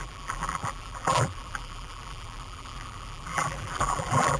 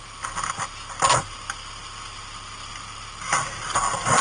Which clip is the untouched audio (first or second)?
second